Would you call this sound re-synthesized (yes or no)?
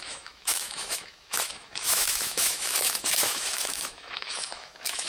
yes